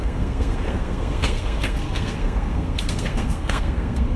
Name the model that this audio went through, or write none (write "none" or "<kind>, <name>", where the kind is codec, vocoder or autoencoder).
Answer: codec, SNAC